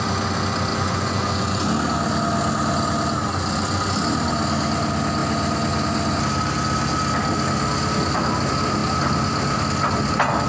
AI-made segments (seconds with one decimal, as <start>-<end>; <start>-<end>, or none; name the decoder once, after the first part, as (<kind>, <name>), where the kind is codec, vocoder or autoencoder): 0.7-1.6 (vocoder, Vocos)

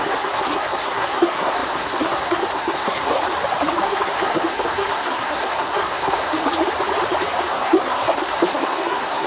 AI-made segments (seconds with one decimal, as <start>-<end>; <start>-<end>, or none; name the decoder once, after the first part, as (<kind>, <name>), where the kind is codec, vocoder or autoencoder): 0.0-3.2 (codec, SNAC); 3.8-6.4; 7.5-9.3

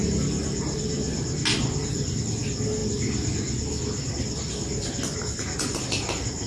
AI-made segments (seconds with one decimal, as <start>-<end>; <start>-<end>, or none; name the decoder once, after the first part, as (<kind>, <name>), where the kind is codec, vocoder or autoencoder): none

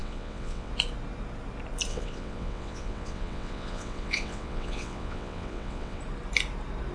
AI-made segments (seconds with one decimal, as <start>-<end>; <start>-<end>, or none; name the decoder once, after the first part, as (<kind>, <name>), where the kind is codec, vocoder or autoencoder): 0.0-0.7 (vocoder, WaveNeXt); 1.9-6.0